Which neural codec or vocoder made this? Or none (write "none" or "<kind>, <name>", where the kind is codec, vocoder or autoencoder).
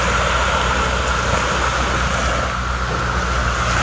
none